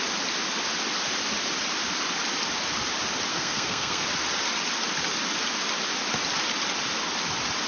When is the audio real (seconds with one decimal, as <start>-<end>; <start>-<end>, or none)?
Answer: 0.0-3.3; 4.0-7.7